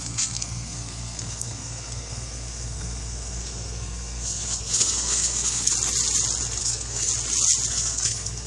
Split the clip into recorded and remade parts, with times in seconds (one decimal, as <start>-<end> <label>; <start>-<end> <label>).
0.0-5.7 remade; 5.7-6.6 recorded; 6.6-7.1 remade; 7.1-7.7 recorded; 7.7-8.5 remade